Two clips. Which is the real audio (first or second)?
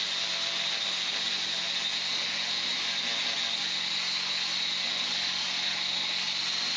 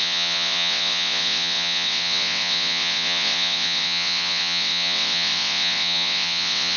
first